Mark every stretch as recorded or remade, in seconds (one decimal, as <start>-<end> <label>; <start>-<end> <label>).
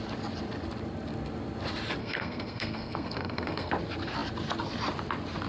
0.0-2.0 recorded; 2.0-3.7 remade; 3.7-5.5 recorded